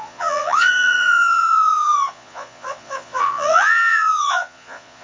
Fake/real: fake